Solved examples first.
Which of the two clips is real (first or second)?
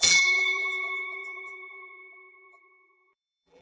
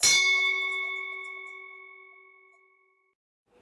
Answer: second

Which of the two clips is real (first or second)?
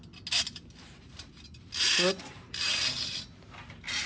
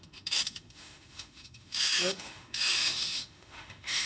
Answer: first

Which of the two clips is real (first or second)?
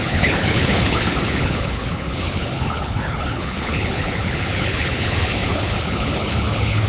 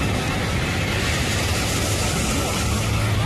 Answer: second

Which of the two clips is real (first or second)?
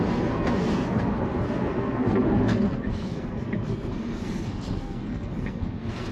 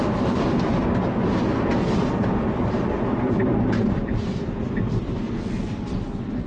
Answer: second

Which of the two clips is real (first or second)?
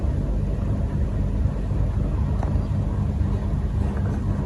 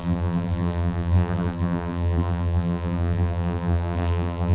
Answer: first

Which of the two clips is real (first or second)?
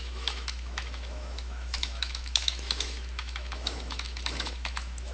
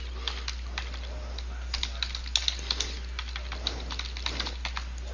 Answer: second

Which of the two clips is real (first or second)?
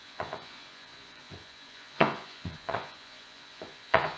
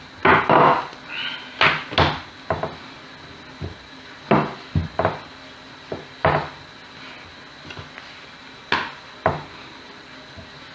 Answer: second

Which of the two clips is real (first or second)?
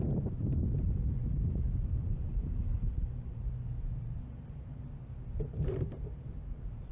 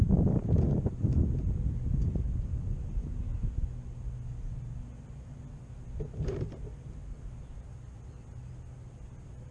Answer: second